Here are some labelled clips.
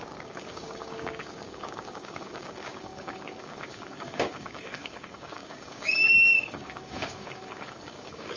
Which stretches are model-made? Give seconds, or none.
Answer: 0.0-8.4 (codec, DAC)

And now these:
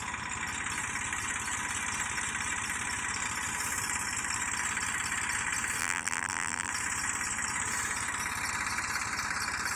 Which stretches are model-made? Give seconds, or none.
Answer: 5.8-6.7 (vocoder, BigVGAN v2)

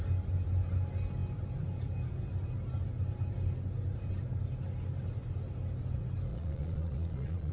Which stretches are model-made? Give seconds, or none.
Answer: 6.3-7.5 (vocoder, Vocos)

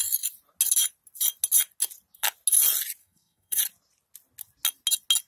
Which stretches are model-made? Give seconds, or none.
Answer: 3.0-3.6 (codec, SNAC)

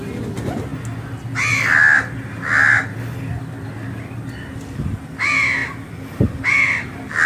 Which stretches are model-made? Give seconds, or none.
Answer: none

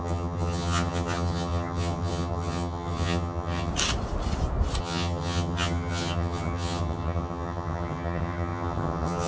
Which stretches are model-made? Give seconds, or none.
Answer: 0.0-3.7 (vocoder, HiFi-GAN); 4.8-9.3

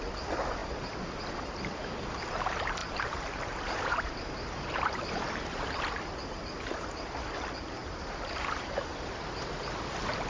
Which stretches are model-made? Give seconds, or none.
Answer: 2.8-5.8 (vocoder, BigVGAN v2); 7.8-8.8